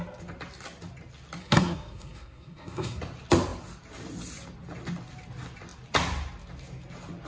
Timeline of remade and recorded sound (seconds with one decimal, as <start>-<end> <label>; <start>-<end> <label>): 0.0-1.4 recorded; 1.4-3.0 remade; 3.0-7.3 recorded